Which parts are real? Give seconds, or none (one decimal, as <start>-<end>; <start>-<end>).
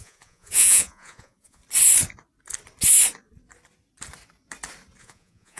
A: 1.6-5.0